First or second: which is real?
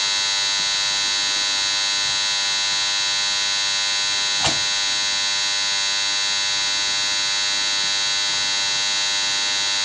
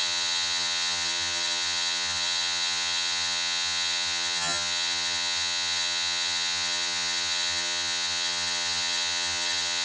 first